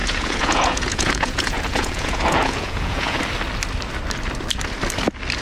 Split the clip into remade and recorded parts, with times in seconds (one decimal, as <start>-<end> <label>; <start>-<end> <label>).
0.0-3.2 remade; 3.2-5.4 recorded